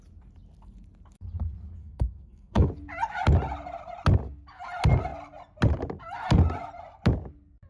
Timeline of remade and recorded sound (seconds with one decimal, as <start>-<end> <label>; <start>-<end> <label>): 0.0-1.8 recorded; 1.8-2.7 remade; 2.7-7.7 recorded